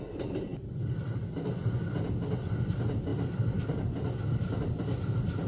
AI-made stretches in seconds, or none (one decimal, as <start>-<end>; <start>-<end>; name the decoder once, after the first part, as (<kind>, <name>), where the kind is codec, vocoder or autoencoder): none